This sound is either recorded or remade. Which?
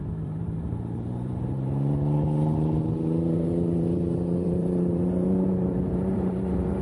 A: remade